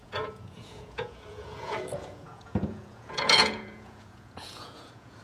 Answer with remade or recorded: remade